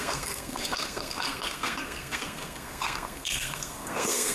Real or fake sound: fake